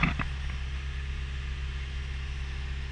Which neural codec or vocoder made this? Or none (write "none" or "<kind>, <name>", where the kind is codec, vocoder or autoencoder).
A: none